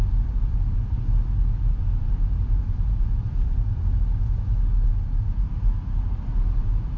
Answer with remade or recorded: recorded